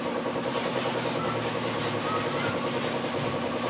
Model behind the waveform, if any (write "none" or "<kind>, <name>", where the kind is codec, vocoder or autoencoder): none